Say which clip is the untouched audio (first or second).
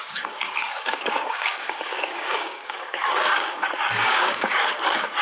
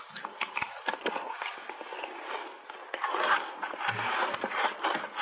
second